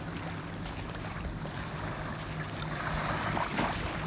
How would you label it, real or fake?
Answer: real